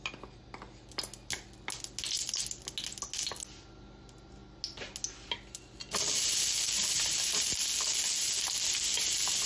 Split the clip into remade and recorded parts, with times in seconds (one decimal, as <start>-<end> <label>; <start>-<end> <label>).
0.0-9.5 recorded